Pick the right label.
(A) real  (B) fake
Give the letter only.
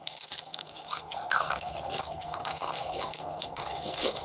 B